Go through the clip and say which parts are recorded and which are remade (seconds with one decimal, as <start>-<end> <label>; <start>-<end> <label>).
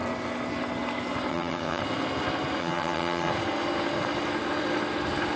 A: 0.0-1.3 recorded; 1.3-1.8 remade; 1.8-2.6 recorded; 2.6-3.3 remade; 3.3-5.4 recorded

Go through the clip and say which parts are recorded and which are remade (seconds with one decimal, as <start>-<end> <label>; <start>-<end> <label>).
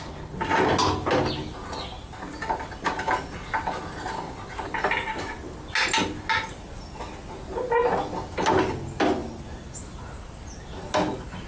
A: 0.0-11.5 recorded